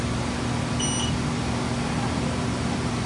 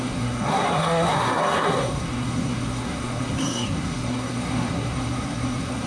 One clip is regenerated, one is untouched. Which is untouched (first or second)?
first